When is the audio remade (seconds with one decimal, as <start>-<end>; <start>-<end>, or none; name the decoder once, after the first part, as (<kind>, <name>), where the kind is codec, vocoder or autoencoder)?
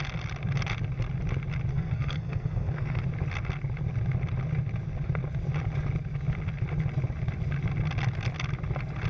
1.7-3.0 (codec, SNAC)